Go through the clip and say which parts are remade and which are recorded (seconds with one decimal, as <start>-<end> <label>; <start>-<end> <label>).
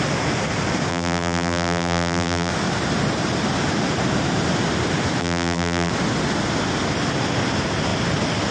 0.0-0.9 recorded; 0.9-2.5 remade; 2.5-5.2 recorded; 5.2-5.9 remade; 5.9-8.5 recorded